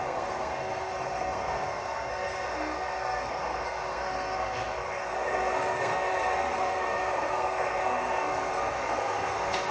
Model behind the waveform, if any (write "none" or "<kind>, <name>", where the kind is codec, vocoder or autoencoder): codec, SNAC